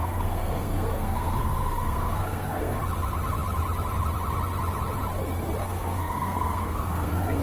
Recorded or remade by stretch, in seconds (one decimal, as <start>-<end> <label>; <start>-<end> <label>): 0.0-2.8 remade; 2.8-5.6 recorded; 5.6-7.4 remade